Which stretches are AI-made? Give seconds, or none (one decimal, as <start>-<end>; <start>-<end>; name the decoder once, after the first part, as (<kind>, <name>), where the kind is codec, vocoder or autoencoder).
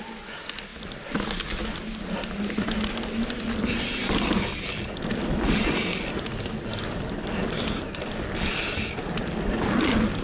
none